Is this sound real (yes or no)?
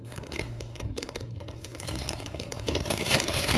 no